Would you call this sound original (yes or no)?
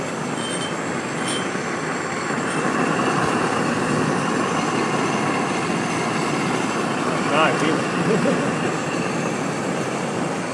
yes